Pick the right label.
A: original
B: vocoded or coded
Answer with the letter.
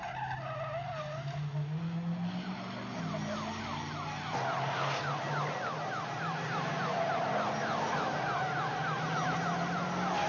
A